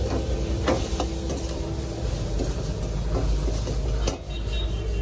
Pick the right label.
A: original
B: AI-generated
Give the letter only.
A